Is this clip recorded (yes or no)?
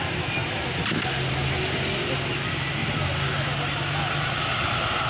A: yes